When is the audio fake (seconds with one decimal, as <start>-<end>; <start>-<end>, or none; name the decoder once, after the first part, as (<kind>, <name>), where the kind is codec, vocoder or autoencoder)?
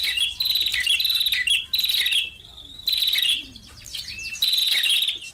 3.2-4.6 (vocoder, BigVGAN v2)